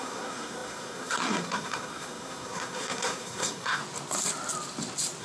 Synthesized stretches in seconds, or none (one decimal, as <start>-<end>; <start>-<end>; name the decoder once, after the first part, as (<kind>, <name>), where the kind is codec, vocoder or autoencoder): 0.0-3.8 (codec, SNAC)

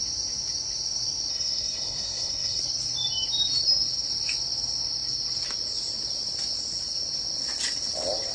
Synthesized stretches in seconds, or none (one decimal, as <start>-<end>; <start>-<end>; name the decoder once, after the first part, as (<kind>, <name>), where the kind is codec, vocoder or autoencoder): 1.3-2.6 (codec, SNAC)

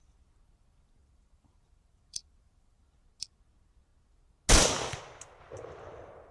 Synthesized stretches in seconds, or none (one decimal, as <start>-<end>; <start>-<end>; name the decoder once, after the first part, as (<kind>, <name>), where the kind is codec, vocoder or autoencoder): 1.0-2.9 (vocoder, BigVGAN v2)